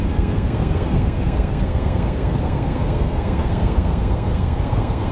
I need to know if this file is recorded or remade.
remade